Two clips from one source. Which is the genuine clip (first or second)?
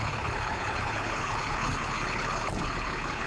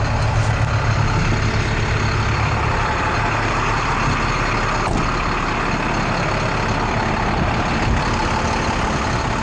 second